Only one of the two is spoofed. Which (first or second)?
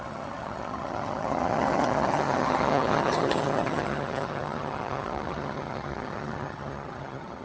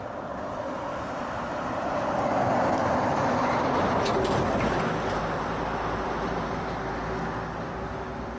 first